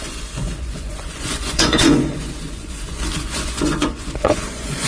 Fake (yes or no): yes